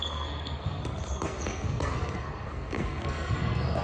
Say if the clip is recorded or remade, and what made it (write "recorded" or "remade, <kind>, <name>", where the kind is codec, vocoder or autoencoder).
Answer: remade, codec, SNAC